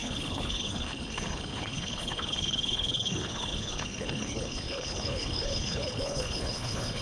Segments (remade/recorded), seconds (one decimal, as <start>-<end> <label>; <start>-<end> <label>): 0.0-7.0 remade

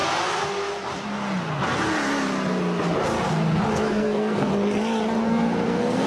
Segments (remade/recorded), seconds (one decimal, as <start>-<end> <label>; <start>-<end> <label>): 0.0-3.7 recorded; 3.7-4.5 remade; 4.5-5.2 recorded; 5.2-6.1 remade